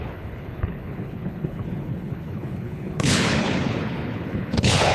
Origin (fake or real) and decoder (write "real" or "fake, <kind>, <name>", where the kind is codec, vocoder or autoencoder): fake, codec, HILCodec